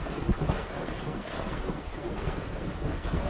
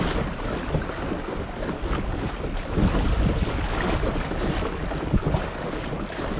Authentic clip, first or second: second